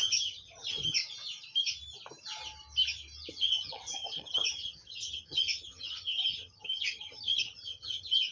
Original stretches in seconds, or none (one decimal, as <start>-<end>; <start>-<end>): 1.0-3.3